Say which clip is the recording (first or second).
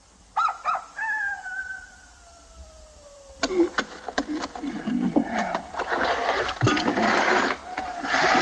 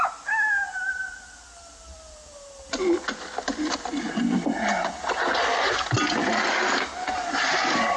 second